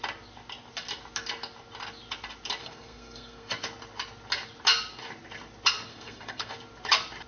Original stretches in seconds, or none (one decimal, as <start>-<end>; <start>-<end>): 0.0-2.6; 3.5-5.9; 6.5-7.3